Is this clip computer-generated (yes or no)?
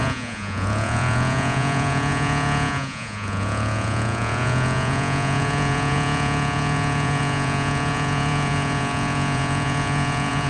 yes